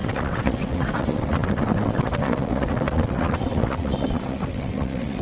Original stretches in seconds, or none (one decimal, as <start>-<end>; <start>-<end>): none